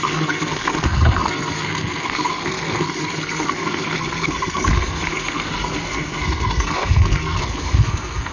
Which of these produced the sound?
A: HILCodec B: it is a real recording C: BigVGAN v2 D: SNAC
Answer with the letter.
D